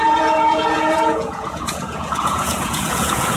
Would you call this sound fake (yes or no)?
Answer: yes